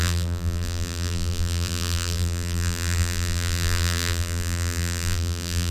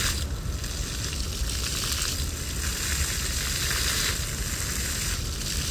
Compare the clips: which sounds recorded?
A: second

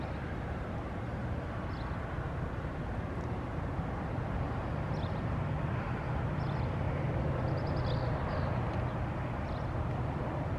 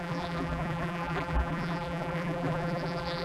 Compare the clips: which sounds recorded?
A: first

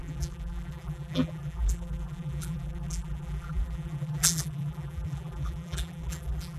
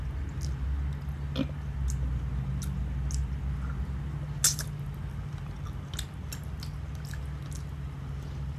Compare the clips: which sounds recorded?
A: second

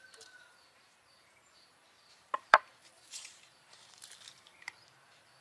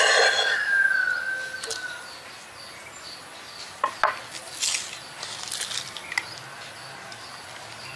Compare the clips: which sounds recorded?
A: second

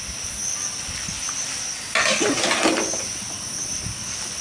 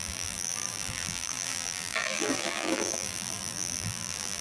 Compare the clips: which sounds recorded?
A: first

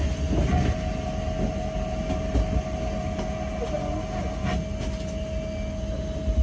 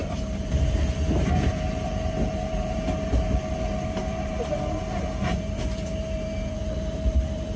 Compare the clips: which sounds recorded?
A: first